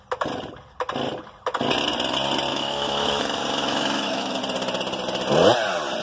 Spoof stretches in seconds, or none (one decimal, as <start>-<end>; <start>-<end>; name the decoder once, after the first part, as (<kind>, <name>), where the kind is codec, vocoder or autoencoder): 2.5-4.4 (autoencoder, DAC-VAE)

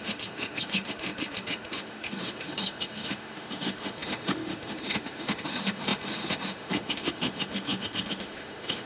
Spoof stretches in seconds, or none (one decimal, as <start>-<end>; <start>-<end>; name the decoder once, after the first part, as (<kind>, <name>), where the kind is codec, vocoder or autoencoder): 0.0-8.9 (autoencoder, DAC-VAE)

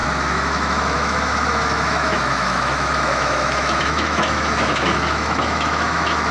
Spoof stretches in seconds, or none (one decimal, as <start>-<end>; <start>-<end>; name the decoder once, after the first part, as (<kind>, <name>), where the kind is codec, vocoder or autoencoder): 0.0-6.3 (autoencoder, DAC-VAE)

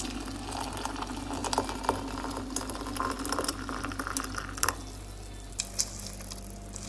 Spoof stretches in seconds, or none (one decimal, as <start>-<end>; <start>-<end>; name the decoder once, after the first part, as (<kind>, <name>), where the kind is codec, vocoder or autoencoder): none

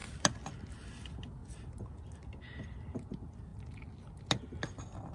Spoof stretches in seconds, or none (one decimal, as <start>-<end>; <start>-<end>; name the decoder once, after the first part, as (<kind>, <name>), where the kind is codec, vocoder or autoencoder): none